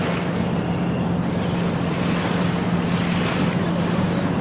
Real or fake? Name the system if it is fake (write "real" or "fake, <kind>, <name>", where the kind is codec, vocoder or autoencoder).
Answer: real